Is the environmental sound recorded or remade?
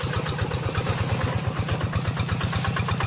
recorded